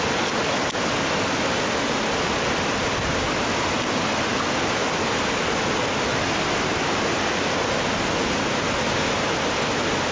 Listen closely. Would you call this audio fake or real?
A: real